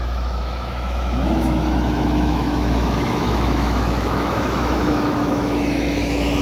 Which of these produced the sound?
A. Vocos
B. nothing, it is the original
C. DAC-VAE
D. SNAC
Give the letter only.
C